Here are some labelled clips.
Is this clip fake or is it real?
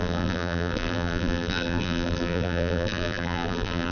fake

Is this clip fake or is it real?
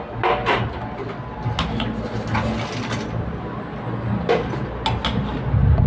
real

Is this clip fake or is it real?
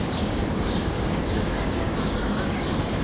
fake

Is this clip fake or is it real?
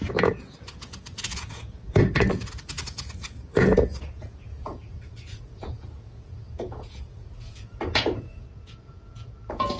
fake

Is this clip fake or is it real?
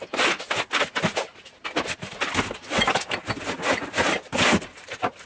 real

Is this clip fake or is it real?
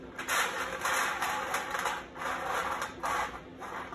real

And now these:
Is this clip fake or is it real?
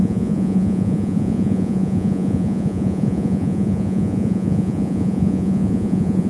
fake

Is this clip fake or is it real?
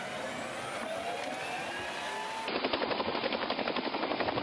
real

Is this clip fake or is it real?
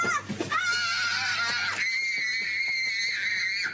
real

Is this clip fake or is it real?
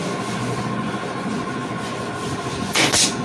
fake